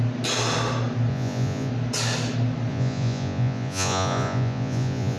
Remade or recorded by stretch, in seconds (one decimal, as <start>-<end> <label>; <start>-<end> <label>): 0.0-1.1 recorded; 1.1-1.7 remade; 1.7-2.7 recorded; 2.7-5.2 remade